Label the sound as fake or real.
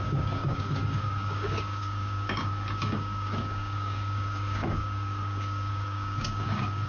fake